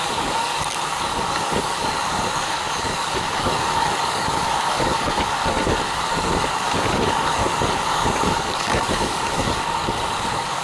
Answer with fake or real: fake